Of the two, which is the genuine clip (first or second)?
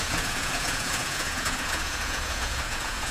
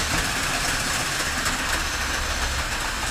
second